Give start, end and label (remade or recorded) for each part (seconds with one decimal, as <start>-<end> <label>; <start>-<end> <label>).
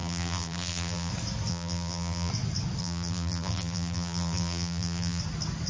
0.0-1.1 remade; 1.1-1.5 recorded; 1.5-2.3 remade; 2.3-2.8 recorded; 2.8-5.2 remade; 5.2-5.7 recorded